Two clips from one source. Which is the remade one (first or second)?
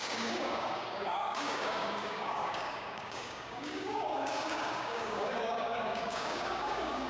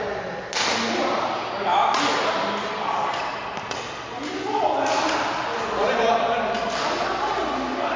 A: first